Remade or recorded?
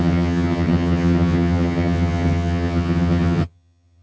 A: remade